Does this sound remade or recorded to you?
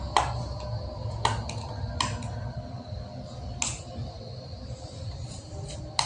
recorded